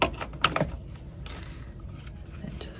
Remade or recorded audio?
recorded